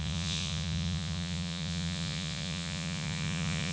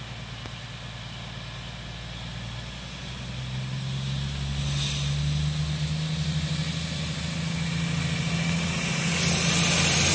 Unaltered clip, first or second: second